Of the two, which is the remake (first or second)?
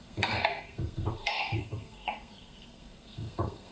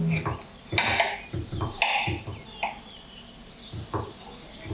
first